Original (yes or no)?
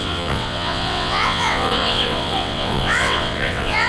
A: no